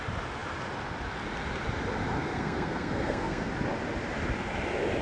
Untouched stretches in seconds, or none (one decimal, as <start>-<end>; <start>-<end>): 0.0-2.3; 3.5-5.0